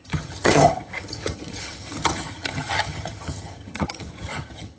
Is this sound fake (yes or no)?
yes